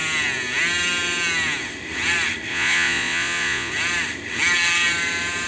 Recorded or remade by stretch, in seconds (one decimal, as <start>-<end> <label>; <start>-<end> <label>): 0.0-2.5 recorded; 2.5-3.7 remade; 3.7-5.5 recorded